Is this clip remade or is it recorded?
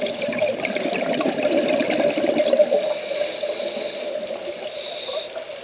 recorded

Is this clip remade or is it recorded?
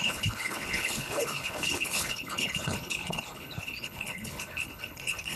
remade